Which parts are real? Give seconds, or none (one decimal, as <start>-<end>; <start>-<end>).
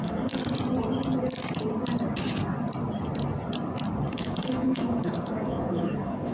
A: 0.4-4.1